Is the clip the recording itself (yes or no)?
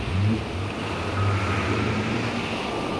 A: yes